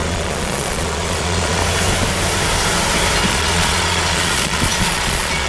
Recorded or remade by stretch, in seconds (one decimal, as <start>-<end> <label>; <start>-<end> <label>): 0.0-1.6 remade; 1.6-3.3 recorded; 3.3-5.5 remade